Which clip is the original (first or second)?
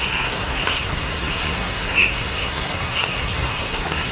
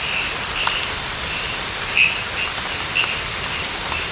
second